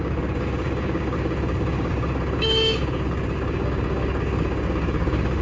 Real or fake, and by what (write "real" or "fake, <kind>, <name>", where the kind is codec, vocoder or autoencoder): fake, codec, DAC